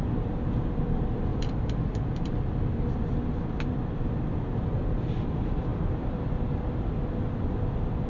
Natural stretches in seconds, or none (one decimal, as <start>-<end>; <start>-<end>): 0.0-1.3; 5.3-5.7; 6.4-8.1